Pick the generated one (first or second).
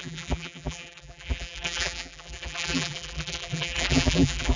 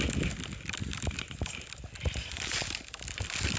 first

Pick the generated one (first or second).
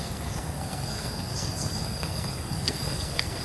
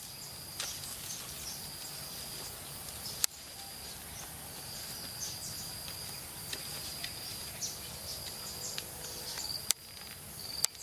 first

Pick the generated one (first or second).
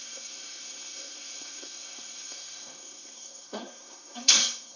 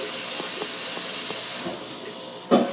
first